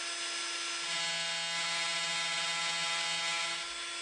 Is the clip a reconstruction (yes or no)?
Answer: no